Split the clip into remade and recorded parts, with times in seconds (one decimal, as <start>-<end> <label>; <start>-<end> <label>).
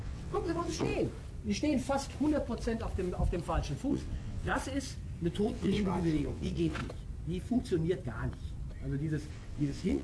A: 0.0-0.9 remade; 0.9-3.9 recorded; 3.9-4.5 remade; 4.5-5.3 recorded; 5.3-6.8 remade; 6.8-9.3 recorded; 9.3-10.0 remade